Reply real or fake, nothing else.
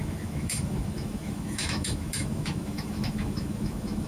fake